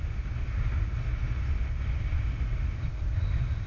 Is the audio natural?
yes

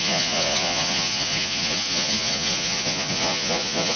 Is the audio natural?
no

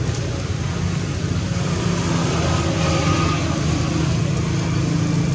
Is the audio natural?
yes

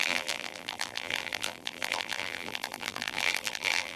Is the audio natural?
no